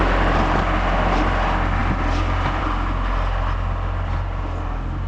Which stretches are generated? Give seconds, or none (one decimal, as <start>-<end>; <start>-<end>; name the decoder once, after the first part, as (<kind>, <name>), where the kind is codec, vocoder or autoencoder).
none